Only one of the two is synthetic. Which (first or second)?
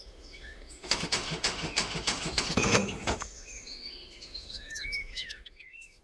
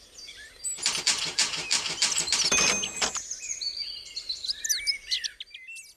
first